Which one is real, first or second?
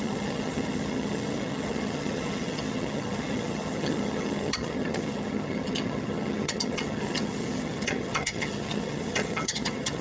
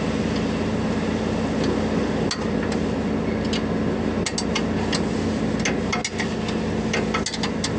second